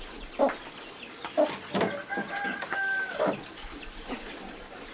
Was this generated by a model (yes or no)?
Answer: no